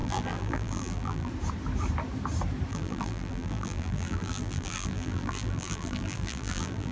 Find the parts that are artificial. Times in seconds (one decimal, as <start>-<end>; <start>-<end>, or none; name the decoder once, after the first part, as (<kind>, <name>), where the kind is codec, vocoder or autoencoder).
0.0-1.3 (vocoder, BigVGAN v2); 2.7-6.9